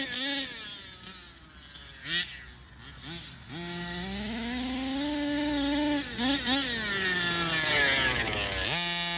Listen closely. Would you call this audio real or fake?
real